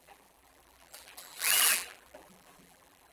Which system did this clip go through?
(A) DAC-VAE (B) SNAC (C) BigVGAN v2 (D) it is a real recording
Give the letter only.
C